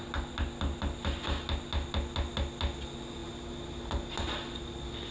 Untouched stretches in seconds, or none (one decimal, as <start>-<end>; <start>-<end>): 0.0-5.1